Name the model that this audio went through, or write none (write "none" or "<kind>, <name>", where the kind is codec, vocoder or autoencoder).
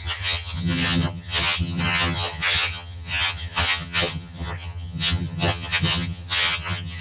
vocoder, HiFi-GAN